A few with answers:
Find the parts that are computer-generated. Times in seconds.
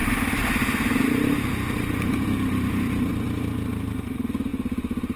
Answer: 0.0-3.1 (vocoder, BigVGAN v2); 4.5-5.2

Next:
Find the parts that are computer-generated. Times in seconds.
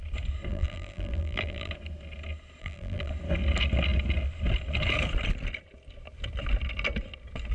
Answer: 0.5-1.7 (vocoder, BigVGAN v2); 2.6-3.1